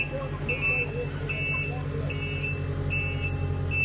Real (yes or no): yes